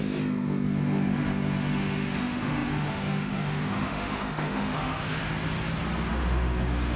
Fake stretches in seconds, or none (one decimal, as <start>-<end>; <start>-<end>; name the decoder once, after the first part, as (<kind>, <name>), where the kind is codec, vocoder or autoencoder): 0.0-5.2 (autoencoder, DAC-VAE); 6.1-7.0